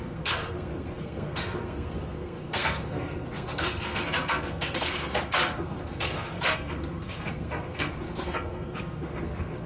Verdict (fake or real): fake